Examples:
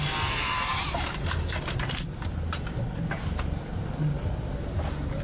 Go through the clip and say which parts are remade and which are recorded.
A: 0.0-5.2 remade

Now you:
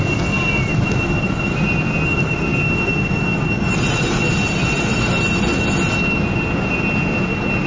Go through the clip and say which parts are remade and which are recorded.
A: 0.0-7.7 recorded

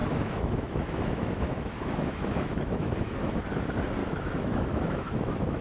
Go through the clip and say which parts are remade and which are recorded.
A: 0.0-3.4 remade; 3.4-4.0 recorded; 4.0-5.6 remade